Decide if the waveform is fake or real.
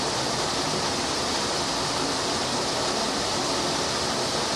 real